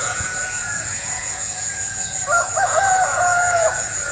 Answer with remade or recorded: remade